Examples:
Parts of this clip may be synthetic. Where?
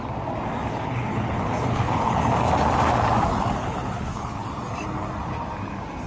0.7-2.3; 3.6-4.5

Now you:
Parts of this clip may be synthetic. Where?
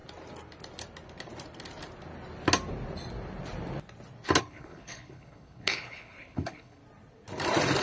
4.4-6.8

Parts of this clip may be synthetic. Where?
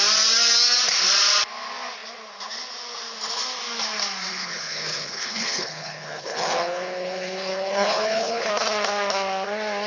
4.3-8.5